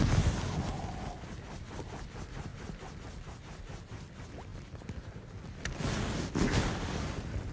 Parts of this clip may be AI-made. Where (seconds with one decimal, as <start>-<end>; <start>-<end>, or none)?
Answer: none